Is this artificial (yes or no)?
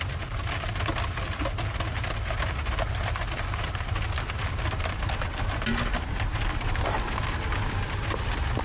no